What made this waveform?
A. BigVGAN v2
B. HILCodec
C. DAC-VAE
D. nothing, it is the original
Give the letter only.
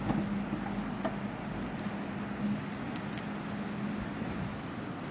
D